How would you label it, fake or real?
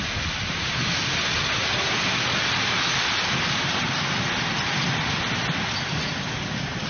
real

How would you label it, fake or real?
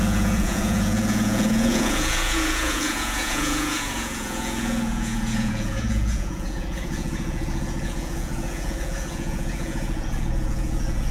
fake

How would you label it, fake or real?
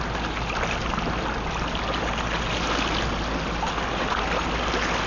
real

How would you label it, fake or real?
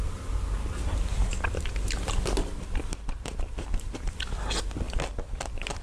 real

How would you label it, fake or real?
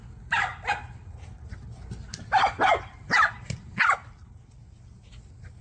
real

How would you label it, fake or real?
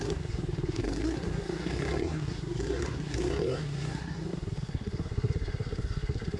fake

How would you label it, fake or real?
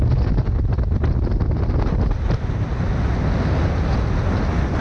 real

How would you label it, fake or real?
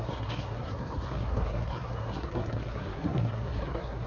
fake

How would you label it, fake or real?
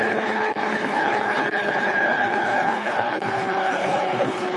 fake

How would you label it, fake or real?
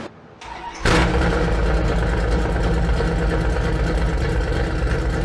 real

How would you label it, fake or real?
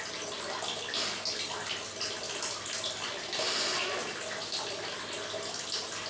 real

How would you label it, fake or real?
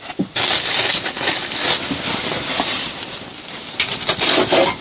real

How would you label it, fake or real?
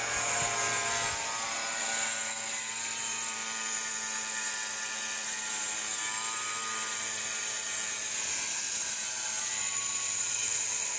real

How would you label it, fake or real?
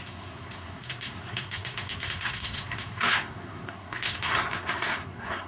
fake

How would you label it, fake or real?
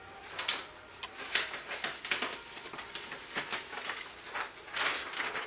real